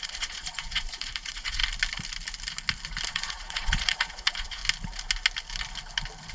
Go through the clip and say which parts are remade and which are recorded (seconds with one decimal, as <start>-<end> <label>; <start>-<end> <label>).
0.0-1.6 remade; 1.6-3.1 recorded; 3.1-4.6 remade; 4.6-6.3 recorded